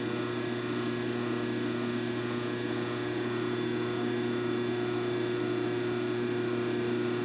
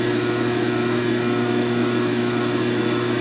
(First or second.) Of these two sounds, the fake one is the second